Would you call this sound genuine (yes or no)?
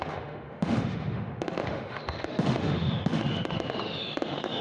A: no